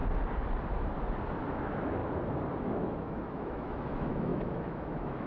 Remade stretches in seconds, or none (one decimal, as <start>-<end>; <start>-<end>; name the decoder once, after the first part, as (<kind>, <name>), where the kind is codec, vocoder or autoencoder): 1.5-2.0 (autoencoder, DAC-VAE); 2.6-5.3